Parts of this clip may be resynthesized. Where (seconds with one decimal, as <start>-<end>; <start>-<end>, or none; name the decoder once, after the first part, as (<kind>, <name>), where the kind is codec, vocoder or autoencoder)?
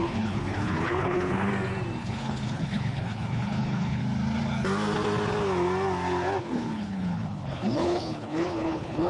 0.0-1.5 (codec, HILCodec); 2.0-4.0; 6.4-9.1